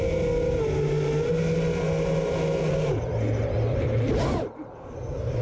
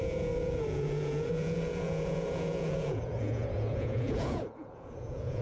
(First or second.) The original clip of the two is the first